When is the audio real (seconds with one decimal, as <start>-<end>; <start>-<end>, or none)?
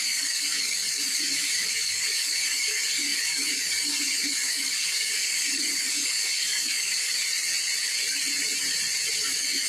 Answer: 7.2-9.2